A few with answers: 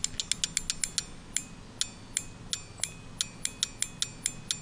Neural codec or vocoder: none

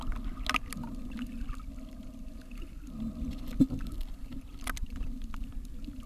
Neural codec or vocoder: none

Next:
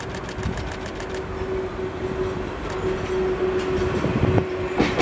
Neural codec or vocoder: none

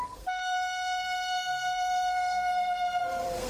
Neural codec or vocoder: codec, SNAC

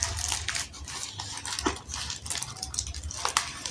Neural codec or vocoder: none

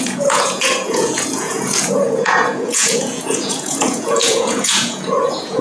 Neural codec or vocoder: vocoder, Vocos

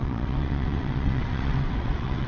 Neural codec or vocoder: vocoder, WaveNeXt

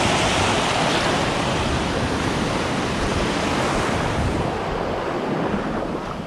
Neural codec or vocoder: none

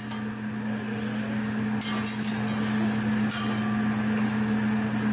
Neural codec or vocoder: none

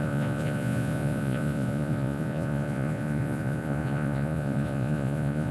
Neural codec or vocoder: vocoder, Vocos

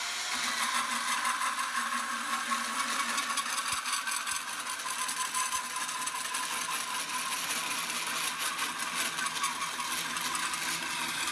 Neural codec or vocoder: none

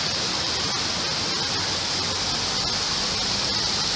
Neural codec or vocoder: none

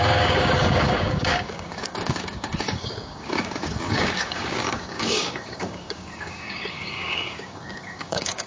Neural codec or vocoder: codec, DAC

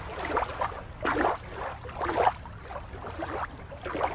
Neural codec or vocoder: none